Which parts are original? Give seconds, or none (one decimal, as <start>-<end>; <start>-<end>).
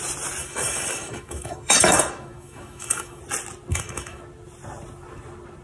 0.0-0.4; 3.2-3.7; 4.2-5.6